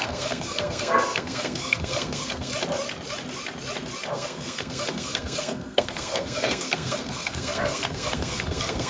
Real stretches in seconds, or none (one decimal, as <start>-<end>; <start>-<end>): 2.5-4.1

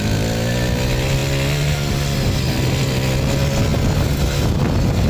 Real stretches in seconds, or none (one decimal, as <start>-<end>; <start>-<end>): 0.0-5.1